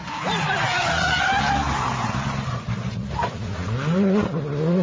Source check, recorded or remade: recorded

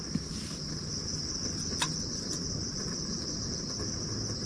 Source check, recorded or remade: recorded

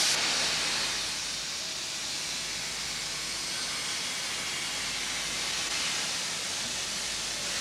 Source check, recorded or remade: recorded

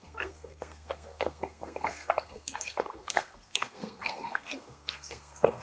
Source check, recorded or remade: remade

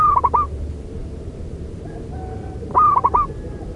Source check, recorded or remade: recorded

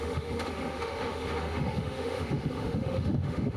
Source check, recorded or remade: remade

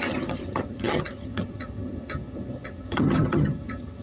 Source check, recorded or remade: remade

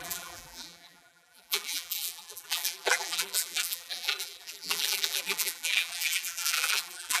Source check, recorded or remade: remade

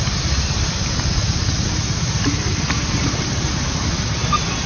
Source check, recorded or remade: recorded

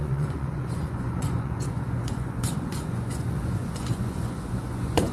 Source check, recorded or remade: remade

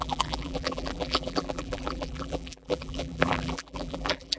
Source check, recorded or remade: remade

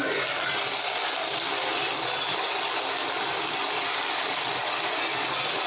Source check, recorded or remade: recorded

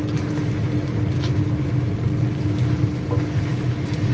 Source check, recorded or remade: recorded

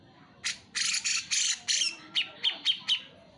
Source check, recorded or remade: recorded